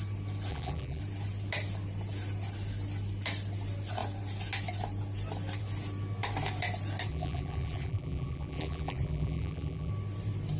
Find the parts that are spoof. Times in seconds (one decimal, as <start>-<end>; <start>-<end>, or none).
0.5-1.0; 7.1-9.9